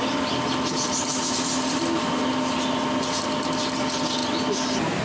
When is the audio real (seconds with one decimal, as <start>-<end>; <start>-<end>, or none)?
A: 0.0-5.0